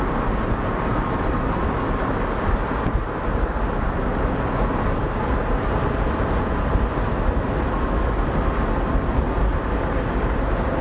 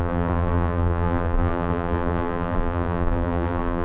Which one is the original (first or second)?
first